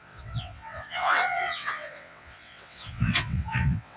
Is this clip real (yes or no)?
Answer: no